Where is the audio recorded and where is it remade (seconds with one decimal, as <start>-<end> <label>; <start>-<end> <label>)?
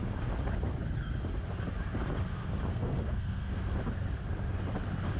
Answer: 0.0-2.7 recorded; 2.7-3.5 remade; 3.5-5.2 recorded